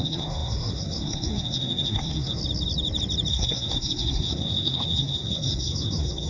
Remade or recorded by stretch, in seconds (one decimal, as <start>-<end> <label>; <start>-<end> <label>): 0.0-2.4 remade; 2.4-3.3 recorded; 3.3-6.3 remade

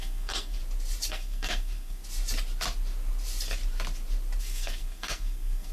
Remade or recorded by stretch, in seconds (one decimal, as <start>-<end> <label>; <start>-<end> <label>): 0.0-0.6 remade; 0.6-1.1 recorded; 1.1-2.0 remade; 2.0-4.4 recorded; 4.4-5.7 remade

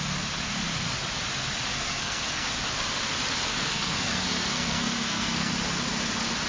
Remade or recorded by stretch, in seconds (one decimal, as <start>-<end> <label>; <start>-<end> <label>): 0.0-1.7 recorded; 1.7-2.5 remade; 2.5-3.5 recorded; 3.5-5.5 remade; 5.5-6.5 recorded

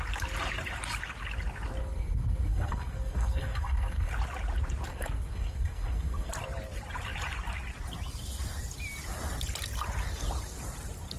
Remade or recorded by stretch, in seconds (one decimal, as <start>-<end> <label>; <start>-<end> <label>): 0.0-1.8 recorded; 1.8-4.1 remade; 4.1-4.9 recorded; 4.9-6.3 remade; 6.3-11.2 recorded

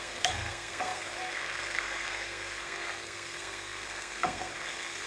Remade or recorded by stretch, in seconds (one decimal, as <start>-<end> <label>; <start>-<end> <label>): 0.0-5.1 remade

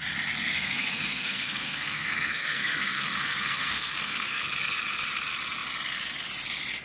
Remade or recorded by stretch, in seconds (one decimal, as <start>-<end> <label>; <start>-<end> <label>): 0.0-0.5 recorded; 0.5-4.4 remade; 4.4-6.8 recorded

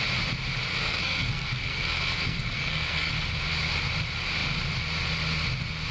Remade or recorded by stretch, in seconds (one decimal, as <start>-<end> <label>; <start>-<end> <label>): 0.0-0.7 recorded; 0.7-3.1 remade; 3.1-5.9 recorded